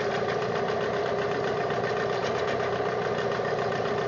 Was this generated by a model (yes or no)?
no